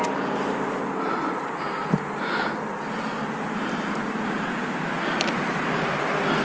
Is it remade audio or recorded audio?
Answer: recorded